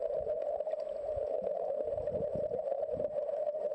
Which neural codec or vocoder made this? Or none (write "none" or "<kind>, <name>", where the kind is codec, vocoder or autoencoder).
none